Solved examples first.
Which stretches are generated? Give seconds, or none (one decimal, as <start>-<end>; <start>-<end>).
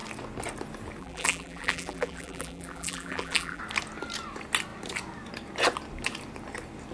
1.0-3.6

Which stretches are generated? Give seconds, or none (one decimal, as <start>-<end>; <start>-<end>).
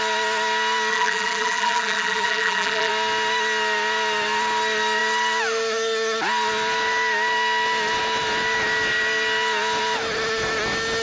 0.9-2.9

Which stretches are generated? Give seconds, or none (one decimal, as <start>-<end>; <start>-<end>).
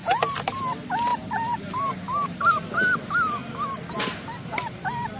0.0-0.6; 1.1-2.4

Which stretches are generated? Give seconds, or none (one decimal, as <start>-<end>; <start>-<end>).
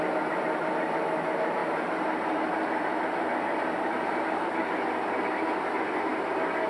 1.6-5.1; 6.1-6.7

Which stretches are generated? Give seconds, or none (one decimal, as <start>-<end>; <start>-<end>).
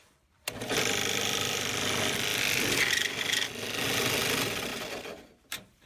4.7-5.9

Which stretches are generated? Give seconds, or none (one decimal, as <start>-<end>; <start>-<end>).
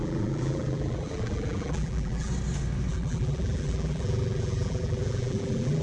0.0-2.3; 2.9-5.8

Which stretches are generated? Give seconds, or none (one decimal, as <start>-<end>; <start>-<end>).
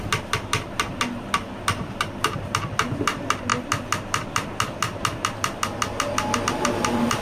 none